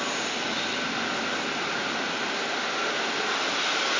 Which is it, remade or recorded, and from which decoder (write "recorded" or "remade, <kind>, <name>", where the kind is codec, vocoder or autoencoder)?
recorded